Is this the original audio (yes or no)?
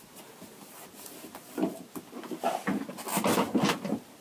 yes